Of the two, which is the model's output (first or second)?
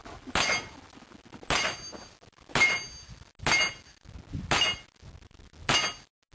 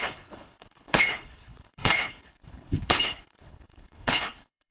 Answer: second